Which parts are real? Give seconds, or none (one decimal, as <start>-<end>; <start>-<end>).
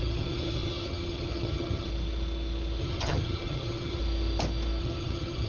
1.9-2.8; 4.0-4.8